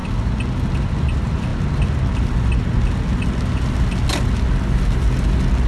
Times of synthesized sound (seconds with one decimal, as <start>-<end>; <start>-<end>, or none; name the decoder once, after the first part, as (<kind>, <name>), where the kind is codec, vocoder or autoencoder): none